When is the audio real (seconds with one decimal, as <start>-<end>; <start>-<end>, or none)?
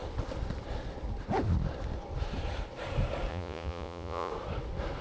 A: 0.0-3.3; 4.3-5.0